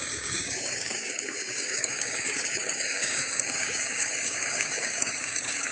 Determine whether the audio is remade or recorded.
remade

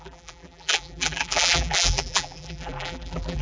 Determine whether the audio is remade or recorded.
remade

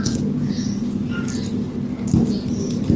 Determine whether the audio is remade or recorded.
recorded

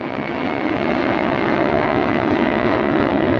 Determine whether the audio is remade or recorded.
remade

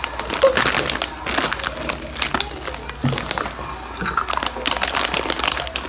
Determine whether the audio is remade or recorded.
recorded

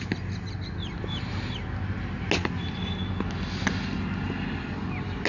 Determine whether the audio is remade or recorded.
recorded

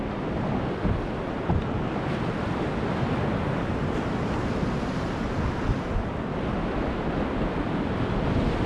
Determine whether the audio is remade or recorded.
recorded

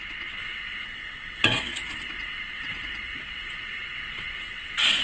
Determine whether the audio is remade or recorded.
remade